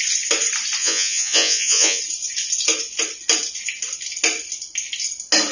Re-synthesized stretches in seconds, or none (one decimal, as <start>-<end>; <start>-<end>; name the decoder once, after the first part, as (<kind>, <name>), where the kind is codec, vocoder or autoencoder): 0.8-2.0 (vocoder, Vocos)